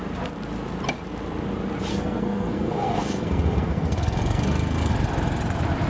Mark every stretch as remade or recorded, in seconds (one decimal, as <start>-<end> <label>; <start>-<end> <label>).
0.0-1.9 recorded; 1.9-4.9 remade; 4.9-5.9 recorded